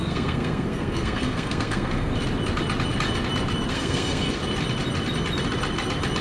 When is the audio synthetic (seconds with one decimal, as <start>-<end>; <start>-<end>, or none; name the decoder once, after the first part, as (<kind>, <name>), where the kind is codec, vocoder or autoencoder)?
0.0-2.1 (codec, SNAC); 3.7-4.4